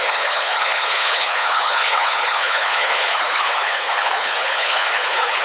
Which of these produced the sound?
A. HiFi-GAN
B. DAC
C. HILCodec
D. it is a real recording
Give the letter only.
C